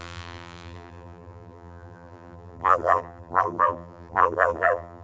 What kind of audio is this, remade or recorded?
remade